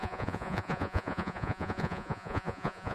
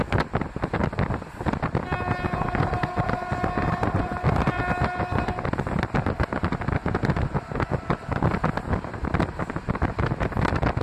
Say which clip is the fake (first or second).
first